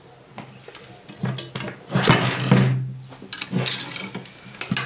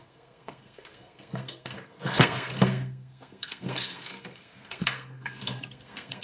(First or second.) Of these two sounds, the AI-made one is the second